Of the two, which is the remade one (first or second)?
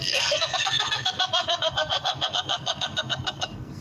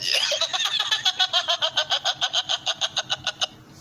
first